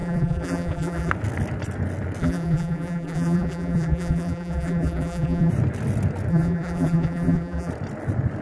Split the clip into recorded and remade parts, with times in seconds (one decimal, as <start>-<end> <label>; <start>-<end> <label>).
0.0-1.1 remade; 1.1-2.2 recorded; 2.2-5.5 remade; 5.5-6.3 recorded; 6.3-7.7 remade; 7.7-8.4 recorded